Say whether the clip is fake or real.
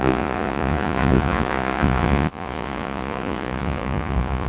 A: fake